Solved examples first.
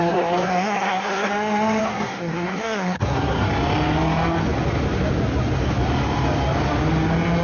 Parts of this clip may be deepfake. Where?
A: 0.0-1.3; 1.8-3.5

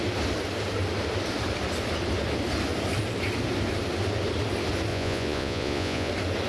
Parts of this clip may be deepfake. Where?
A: 4.9-6.1

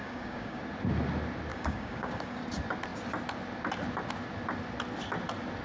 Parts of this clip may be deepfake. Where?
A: 0.0-0.6; 1.5-2.4